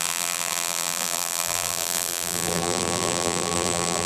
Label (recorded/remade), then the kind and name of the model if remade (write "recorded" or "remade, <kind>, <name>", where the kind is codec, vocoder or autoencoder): remade, vocoder, BigVGAN v2